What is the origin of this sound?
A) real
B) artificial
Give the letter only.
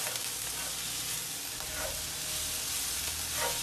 A